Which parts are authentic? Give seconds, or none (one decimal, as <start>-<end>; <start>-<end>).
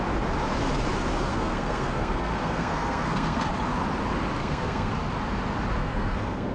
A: 0.0-1.3; 3.5-4.4; 4.9-5.8